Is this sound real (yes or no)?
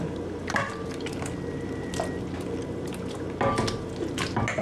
yes